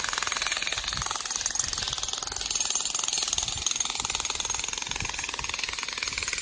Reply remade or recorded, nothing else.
recorded